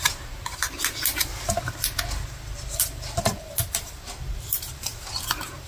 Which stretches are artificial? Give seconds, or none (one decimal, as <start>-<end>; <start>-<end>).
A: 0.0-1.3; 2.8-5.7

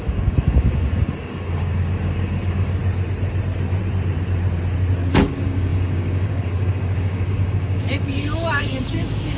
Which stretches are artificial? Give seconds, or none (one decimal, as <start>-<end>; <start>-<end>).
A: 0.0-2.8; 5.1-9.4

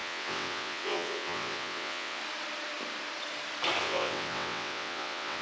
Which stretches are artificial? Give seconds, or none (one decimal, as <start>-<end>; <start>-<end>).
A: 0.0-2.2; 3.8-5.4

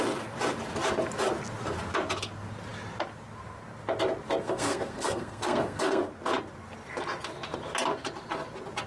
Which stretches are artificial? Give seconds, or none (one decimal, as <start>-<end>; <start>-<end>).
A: 4.4-6.1

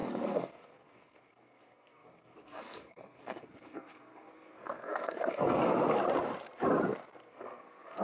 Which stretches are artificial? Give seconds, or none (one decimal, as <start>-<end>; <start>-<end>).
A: 0.0-6.0; 7.3-8.0

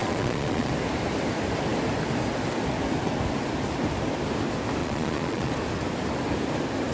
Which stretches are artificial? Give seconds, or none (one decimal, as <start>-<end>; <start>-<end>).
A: 0.0-0.7; 4.8-5.5